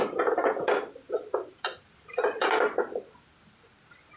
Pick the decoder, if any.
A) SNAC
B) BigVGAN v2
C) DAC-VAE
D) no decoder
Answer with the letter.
D